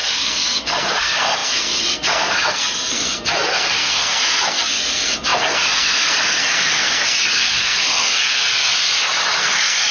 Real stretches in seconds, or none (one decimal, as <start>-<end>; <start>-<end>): 8.7-9.4